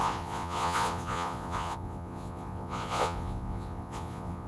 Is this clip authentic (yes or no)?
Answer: no